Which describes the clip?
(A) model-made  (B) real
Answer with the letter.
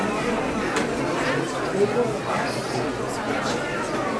B